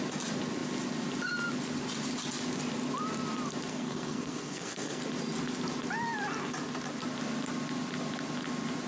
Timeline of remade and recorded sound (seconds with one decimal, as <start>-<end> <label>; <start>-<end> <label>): 0.0-3.7 recorded; 3.7-5.0 remade; 5.0-8.9 recorded